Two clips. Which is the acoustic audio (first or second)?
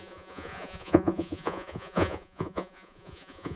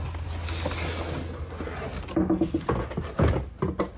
second